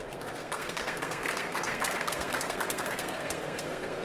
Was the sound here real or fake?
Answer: fake